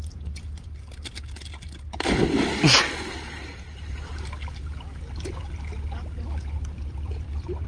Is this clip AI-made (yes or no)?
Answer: no